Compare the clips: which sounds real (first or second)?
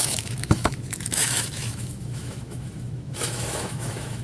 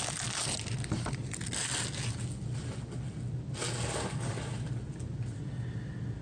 second